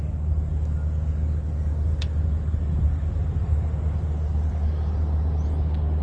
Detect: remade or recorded recorded